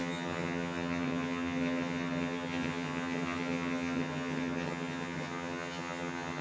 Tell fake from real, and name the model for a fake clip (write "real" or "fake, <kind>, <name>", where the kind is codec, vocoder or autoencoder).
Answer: fake, vocoder, HiFi-GAN